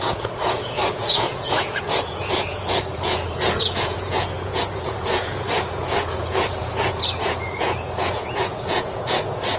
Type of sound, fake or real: fake